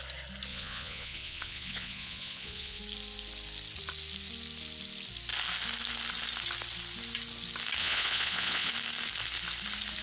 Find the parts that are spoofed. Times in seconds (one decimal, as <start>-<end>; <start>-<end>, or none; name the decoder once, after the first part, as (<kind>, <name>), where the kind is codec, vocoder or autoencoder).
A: 0.5-2.8 (vocoder, Vocos); 7.8-8.7